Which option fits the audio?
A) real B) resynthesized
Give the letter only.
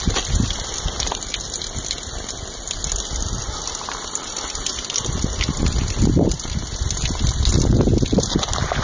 A